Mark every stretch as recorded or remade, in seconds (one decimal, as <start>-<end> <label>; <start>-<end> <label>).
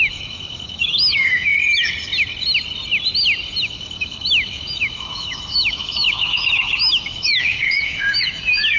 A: 0.0-1.5 remade; 1.5-3.6 recorded; 3.6-8.8 remade